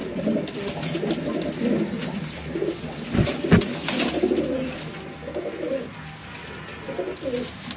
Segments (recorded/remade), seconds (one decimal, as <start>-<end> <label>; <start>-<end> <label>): 0.0-7.8 recorded

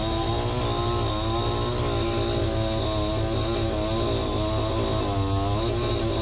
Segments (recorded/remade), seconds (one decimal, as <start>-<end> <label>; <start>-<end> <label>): 0.0-6.2 recorded